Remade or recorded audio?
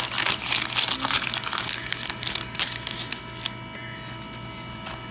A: recorded